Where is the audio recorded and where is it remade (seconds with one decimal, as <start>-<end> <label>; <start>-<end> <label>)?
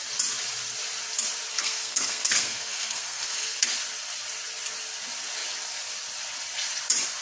0.0-1.5 recorded; 1.5-3.7 remade; 3.7-7.2 recorded